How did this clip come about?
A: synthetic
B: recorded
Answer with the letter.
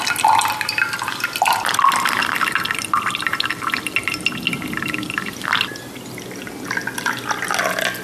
B